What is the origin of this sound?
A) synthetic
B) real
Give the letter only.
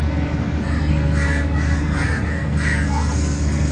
A